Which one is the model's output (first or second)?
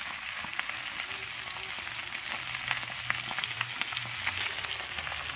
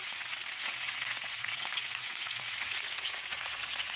second